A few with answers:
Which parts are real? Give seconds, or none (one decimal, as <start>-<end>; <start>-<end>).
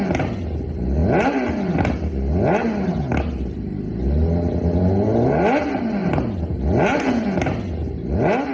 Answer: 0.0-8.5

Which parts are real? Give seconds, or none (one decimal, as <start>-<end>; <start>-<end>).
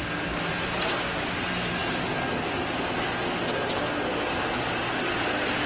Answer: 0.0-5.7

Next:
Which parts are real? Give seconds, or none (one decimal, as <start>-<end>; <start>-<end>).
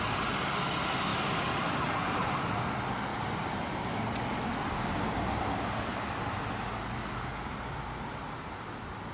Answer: 0.0-1.1; 2.6-3.1; 3.8-9.1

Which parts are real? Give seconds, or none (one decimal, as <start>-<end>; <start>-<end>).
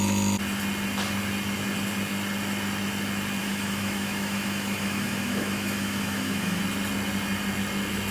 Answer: 0.0-3.4; 6.6-8.1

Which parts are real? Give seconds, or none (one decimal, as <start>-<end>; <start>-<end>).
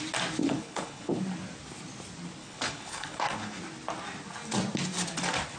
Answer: 0.0-0.4; 1.2-2.4; 3.6-5.6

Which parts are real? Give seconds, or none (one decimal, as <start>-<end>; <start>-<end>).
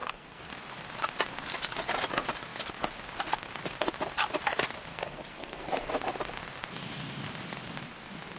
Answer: 0.5-4.9; 5.9-8.4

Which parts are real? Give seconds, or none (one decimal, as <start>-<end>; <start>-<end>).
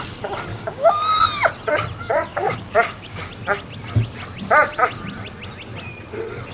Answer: 0.0-0.5; 1.2-2.3; 3.3-6.5